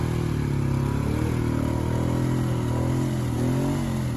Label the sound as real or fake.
real